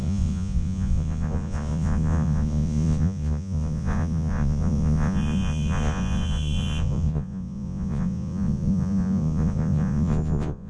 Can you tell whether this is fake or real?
fake